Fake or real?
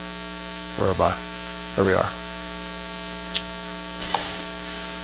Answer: fake